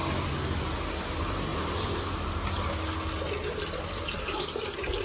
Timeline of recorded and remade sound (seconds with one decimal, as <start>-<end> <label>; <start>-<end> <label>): 0.0-5.0 recorded